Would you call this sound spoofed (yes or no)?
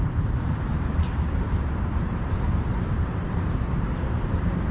yes